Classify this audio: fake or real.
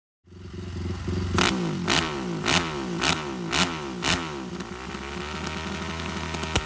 real